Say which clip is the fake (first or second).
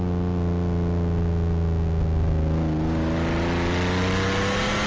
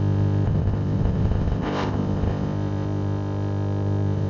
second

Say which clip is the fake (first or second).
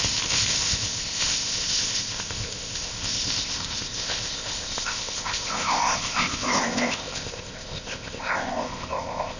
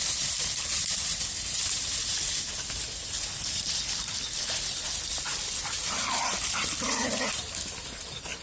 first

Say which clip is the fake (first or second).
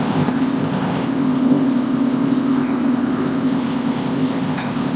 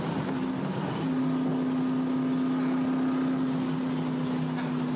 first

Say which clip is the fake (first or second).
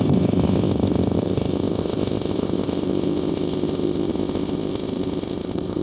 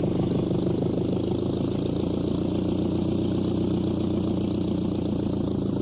first